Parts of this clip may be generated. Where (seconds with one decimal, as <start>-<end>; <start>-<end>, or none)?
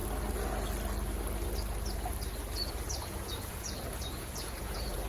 2.7-5.1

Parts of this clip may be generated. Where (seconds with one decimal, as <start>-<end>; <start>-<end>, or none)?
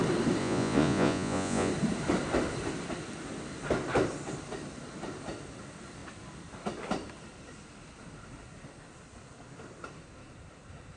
0.4-1.7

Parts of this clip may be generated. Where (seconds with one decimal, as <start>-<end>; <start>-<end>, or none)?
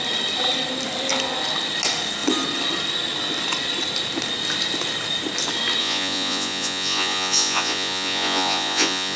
5.8-9.2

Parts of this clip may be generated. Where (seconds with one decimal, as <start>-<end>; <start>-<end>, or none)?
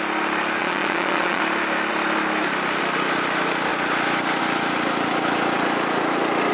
0.6-1.4